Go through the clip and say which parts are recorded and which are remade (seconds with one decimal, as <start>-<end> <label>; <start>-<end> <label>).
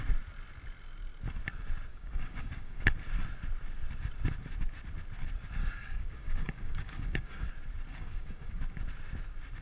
0.0-1.9 recorded; 1.9-2.9 remade; 2.9-5.6 recorded; 5.6-7.5 remade; 7.5-7.9 recorded; 7.9-8.6 remade; 8.6-9.6 recorded